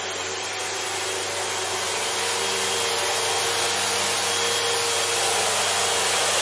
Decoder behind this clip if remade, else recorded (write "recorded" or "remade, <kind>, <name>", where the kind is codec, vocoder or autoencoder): recorded